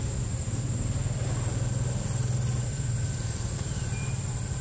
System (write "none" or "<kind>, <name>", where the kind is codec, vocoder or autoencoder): none